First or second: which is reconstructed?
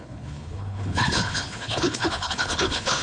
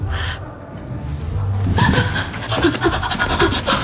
first